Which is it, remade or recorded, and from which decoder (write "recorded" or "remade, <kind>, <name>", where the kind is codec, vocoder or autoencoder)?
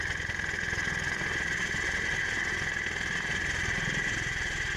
recorded